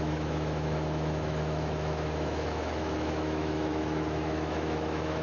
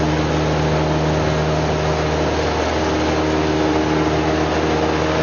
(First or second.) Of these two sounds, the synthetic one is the first